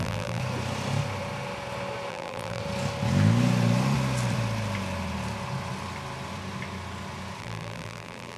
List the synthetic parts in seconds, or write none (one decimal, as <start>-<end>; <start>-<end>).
0.0-0.4; 2.1-2.6; 7.4-8.4